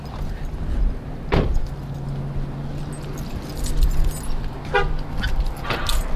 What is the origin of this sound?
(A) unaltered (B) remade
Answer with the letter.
A